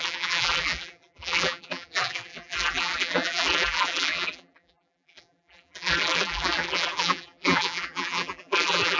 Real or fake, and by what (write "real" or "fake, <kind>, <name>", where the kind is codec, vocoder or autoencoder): fake, vocoder, BigVGAN v2